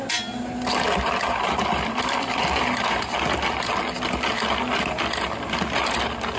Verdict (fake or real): real